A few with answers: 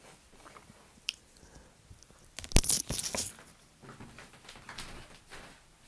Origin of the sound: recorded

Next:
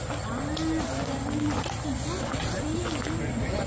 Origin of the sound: recorded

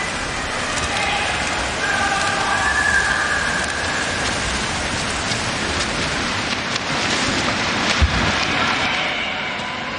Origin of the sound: remade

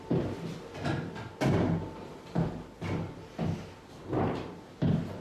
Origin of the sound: recorded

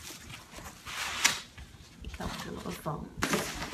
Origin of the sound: recorded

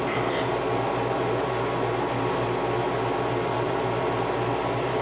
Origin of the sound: recorded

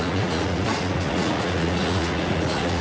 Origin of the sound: remade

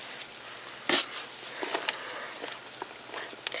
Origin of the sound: recorded